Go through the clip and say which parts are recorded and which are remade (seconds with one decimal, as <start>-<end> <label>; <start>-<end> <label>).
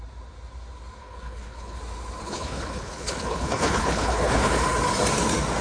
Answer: 0.0-1.0 recorded; 1.0-1.8 remade; 1.8-2.2 recorded; 2.2-4.5 remade; 4.5-5.6 recorded